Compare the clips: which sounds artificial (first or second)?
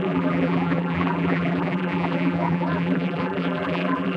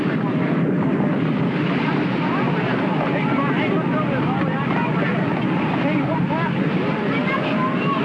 first